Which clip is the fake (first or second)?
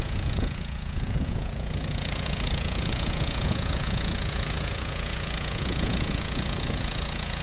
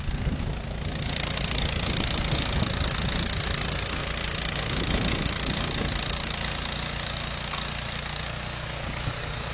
first